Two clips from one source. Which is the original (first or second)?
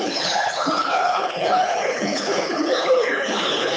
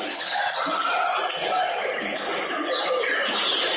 second